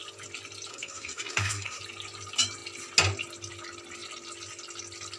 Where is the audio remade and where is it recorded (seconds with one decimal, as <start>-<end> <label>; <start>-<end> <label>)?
0.0-0.7 recorded; 0.7-1.8 remade; 1.8-5.2 recorded